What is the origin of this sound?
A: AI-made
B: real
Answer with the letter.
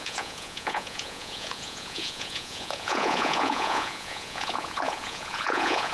A